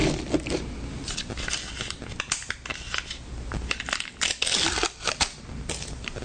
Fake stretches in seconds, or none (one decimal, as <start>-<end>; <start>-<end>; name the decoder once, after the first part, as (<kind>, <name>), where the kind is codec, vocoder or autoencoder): none